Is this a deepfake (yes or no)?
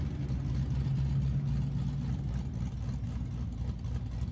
no